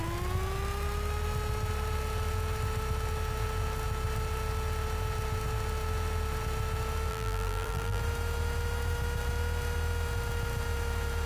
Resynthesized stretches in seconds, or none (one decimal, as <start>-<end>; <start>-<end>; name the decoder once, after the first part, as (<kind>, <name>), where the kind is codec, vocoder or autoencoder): 7.1-8.0 (vocoder, BigVGAN v2)